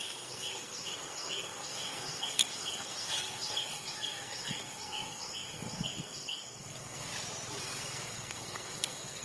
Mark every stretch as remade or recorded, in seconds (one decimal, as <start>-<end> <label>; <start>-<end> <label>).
0.0-7.1 remade; 7.1-7.6 recorded; 7.6-9.2 remade